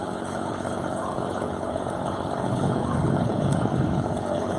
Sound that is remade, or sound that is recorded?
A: remade